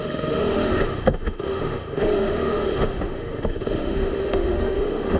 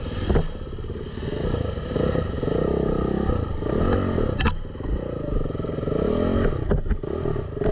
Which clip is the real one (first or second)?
second